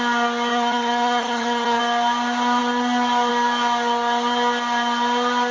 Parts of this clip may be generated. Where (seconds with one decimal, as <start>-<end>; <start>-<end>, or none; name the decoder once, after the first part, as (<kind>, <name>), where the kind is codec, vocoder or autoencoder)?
0.5-1.8 (vocoder, HiFi-GAN)